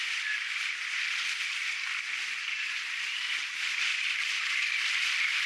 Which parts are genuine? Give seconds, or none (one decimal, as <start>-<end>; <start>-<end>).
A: 0.0-5.5